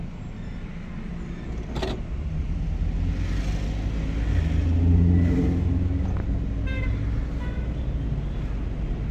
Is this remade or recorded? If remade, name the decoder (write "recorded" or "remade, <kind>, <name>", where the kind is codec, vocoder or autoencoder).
recorded